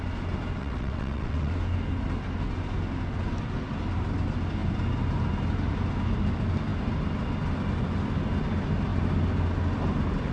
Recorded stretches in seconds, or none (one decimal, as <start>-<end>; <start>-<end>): 0.0-0.6; 1.5-10.3